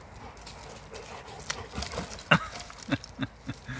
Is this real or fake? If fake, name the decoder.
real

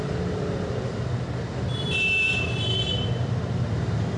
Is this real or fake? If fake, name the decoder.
fake, vocoder, BigVGAN v2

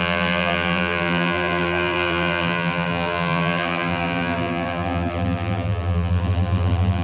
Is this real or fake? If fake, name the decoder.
fake, vocoder, BigVGAN v2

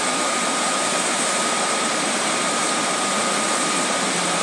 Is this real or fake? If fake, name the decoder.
fake, vocoder, BigVGAN v2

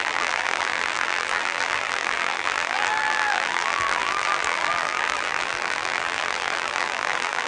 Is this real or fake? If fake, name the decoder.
fake, vocoder, BigVGAN v2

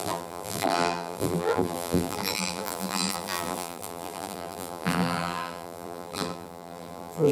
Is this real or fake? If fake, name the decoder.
fake, vocoder, BigVGAN v2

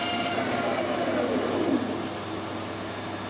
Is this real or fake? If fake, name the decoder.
real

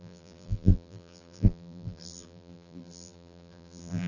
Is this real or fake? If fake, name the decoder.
fake, vocoder, BigVGAN v2